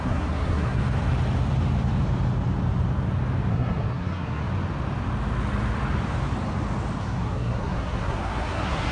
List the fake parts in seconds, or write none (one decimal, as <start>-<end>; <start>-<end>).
0.0-0.8; 3.5-4.4; 7.0-8.9